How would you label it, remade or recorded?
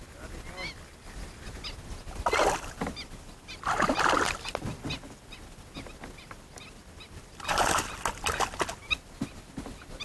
recorded